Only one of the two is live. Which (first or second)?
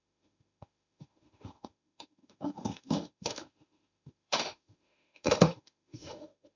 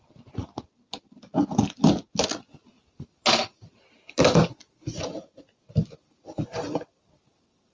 second